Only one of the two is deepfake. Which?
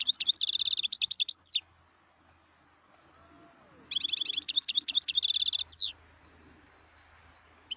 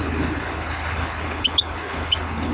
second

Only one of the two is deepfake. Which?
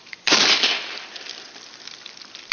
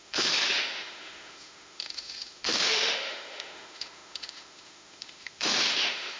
second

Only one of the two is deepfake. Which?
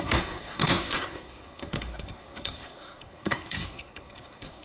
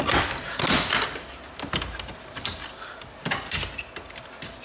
first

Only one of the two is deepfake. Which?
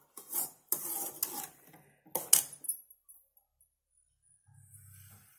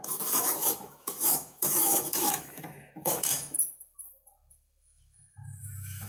second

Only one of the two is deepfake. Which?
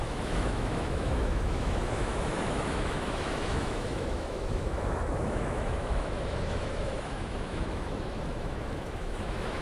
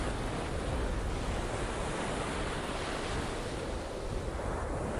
first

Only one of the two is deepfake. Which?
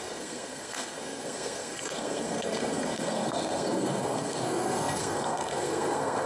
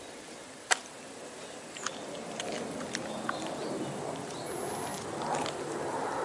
first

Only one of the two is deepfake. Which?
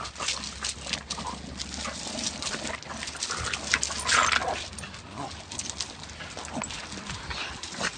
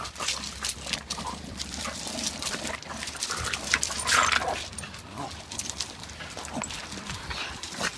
second